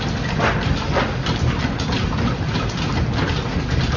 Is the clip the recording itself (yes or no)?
yes